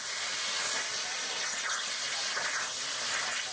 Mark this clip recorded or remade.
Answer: recorded